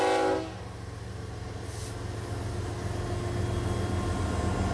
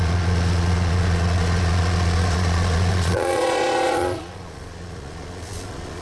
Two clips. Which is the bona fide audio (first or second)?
first